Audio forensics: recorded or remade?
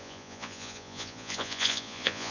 remade